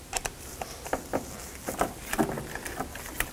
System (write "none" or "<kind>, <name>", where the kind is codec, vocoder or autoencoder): none